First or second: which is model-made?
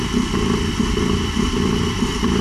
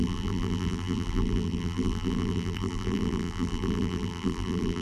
second